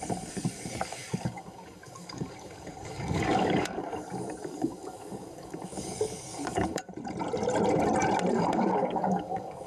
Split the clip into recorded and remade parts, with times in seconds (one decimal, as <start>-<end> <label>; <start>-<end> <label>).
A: 0.0-6.9 remade; 6.9-8.3 recorded; 8.3-9.7 remade